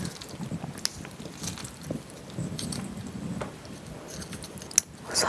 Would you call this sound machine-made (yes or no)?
no